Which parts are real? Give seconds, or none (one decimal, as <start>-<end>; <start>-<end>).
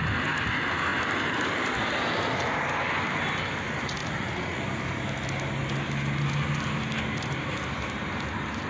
0.0-4.0; 4.6-8.7